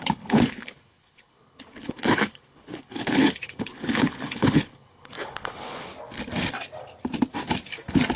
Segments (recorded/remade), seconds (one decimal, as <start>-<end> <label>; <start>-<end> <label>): 0.0-5.9 remade; 5.9-8.2 recorded